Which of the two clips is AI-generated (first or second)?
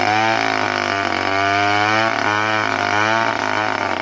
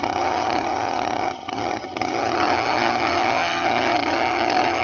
second